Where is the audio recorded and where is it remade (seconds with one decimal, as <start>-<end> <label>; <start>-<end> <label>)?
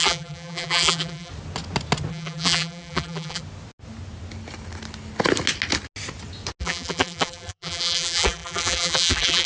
0.0-1.3 remade; 1.3-2.1 recorded; 2.1-3.4 remade; 3.4-6.6 recorded; 6.6-9.5 remade